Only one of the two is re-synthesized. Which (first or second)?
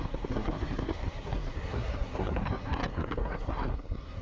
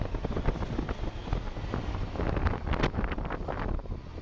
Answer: first